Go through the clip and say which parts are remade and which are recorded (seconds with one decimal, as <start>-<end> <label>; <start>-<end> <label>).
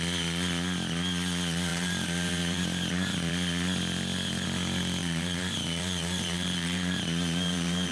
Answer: 0.0-1.7 recorded; 1.7-3.3 remade; 3.3-5.0 recorded; 5.0-7.9 remade